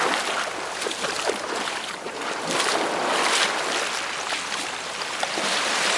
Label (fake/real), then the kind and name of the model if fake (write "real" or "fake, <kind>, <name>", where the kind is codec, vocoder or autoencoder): real